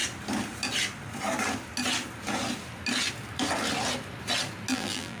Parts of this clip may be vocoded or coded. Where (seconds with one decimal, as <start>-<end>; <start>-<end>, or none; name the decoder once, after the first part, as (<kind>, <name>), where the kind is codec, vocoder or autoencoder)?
4.7-5.2 (vocoder, BigVGAN v2)